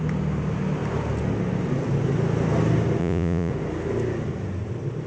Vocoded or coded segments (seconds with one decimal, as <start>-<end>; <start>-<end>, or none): 3.0-3.5